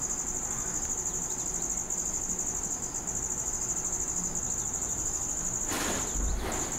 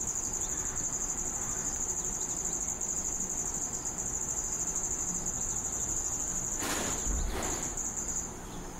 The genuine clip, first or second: first